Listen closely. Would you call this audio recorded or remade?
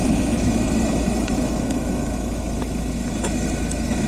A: remade